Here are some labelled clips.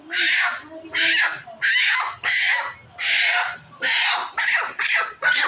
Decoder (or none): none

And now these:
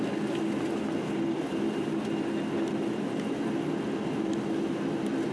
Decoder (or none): none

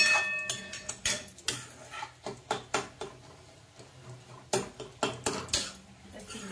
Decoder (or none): none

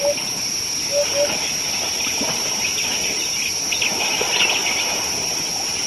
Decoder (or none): none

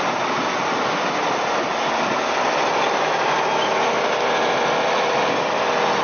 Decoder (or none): none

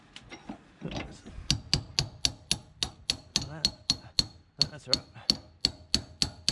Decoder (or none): none